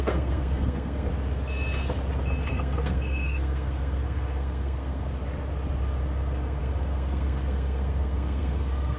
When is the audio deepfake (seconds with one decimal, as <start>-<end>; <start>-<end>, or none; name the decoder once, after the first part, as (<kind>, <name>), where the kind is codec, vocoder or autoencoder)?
0.0-1.1 (codec, SNAC); 2.5-5.1; 6.0-9.0